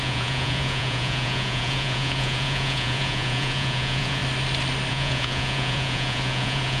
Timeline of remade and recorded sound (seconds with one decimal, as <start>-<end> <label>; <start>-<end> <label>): 0.0-4.2 remade; 4.2-4.9 recorded; 4.9-6.8 remade